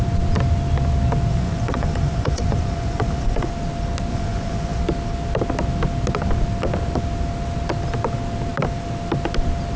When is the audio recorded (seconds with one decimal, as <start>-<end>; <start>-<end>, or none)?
0.0-1.3; 3.5-4.1; 4.8-9.8